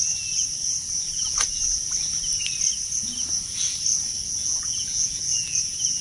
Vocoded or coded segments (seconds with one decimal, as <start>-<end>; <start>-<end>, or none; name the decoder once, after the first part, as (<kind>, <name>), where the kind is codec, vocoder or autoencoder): 4.4-5.6 (vocoder, Vocos)